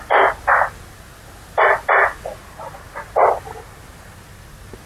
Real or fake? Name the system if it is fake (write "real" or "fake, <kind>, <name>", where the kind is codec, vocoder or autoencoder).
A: real